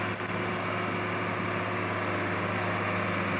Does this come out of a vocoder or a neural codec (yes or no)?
no